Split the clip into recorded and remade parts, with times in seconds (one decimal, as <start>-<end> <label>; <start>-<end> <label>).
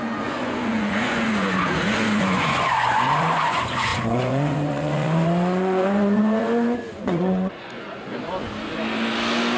0.0-8.1 remade; 8.1-9.6 recorded